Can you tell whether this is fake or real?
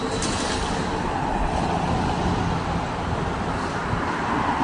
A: real